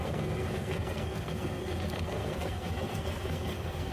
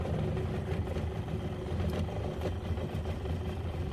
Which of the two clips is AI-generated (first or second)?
first